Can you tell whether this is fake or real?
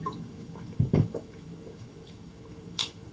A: fake